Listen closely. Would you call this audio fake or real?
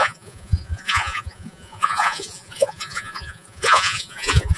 fake